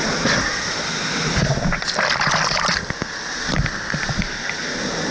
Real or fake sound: real